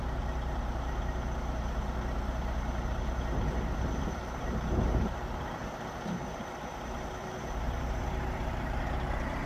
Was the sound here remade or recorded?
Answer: remade